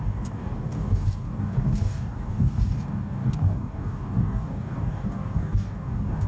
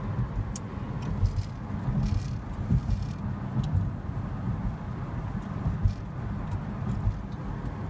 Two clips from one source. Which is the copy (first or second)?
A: first